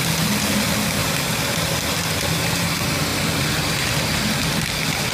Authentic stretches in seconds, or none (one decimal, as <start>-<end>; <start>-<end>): 0.0-1.0; 2.0-5.1